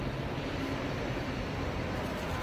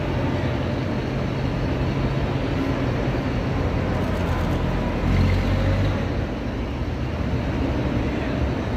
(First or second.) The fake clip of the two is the first